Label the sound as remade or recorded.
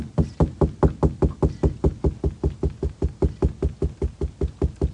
recorded